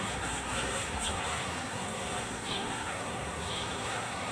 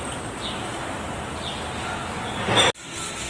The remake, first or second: first